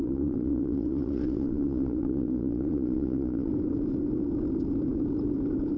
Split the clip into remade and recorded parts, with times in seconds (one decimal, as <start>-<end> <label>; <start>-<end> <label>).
0.0-3.5 remade; 3.5-5.8 recorded

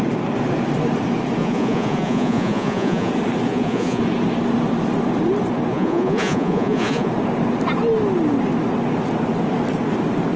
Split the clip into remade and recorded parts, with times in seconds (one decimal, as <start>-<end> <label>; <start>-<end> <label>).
0.0-1.4 recorded; 1.4-3.1 remade; 3.1-3.5 recorded; 3.5-4.0 remade; 4.0-5.7 recorded; 5.7-7.1 remade; 7.1-10.4 recorded

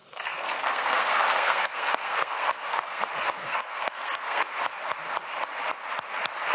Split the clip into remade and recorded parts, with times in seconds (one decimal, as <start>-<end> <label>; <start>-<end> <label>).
0.0-3.0 remade; 3.0-3.4 recorded; 3.4-4.5 remade; 4.5-6.5 recorded